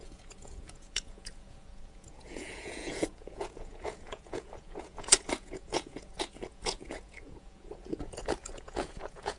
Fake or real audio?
fake